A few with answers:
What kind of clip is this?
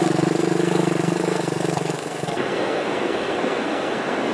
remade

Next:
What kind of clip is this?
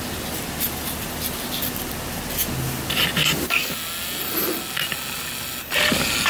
recorded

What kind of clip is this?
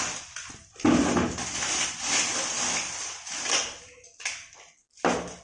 recorded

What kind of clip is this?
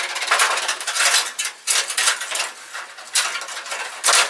recorded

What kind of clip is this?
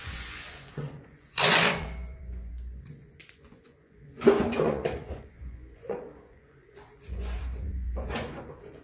remade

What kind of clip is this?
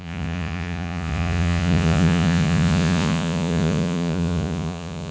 remade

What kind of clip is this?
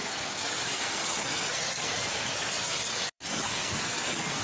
remade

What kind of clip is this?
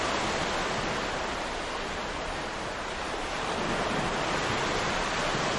recorded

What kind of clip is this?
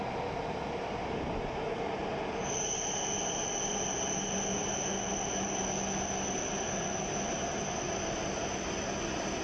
recorded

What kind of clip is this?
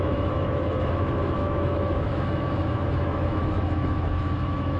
remade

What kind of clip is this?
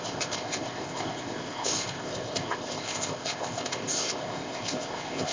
remade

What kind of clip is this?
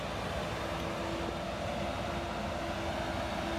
recorded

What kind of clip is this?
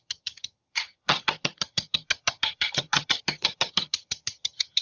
remade